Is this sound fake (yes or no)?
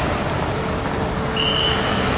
no